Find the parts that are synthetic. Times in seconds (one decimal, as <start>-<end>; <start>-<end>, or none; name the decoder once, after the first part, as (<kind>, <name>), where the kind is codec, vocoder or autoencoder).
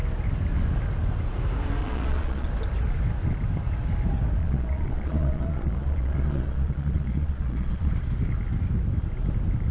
1.8-2.5 (vocoder, Vocos); 4.4-7.9